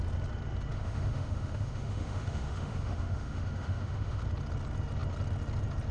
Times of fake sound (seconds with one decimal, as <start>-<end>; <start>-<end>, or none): 0.7-4.2